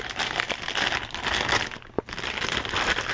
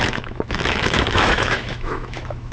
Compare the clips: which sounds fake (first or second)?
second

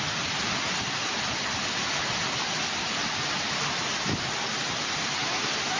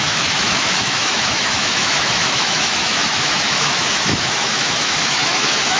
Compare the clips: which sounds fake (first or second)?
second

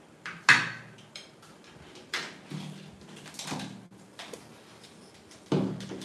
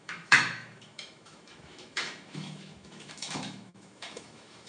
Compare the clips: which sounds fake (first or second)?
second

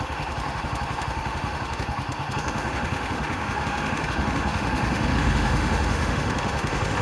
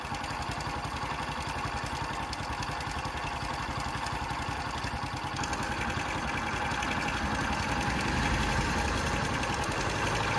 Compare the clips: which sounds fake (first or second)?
first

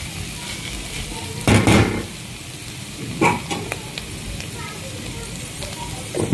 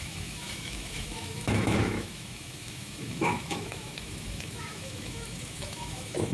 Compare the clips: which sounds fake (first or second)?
second